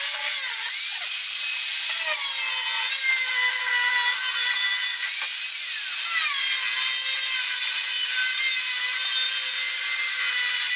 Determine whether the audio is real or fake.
real